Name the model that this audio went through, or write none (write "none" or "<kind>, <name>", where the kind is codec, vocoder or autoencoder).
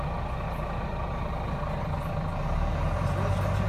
none